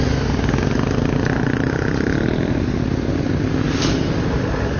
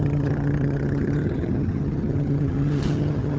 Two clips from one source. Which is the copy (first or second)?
second